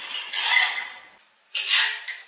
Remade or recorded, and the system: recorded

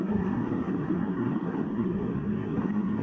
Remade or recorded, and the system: remade, codec, SNAC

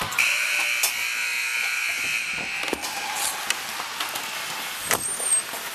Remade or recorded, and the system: recorded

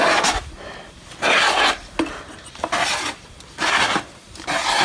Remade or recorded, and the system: recorded